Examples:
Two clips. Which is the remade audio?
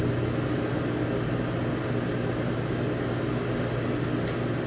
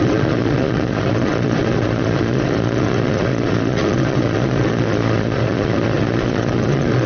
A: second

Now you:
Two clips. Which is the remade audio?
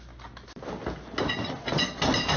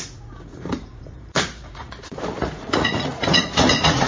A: second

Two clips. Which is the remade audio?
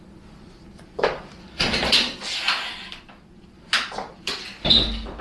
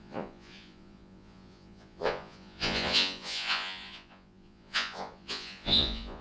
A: second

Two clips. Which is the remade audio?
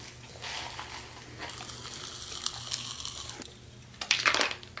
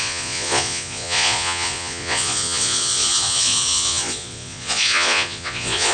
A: second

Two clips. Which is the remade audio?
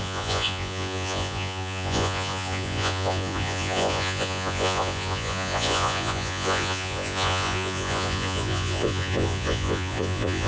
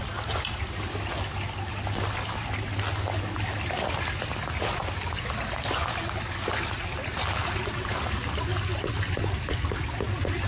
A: first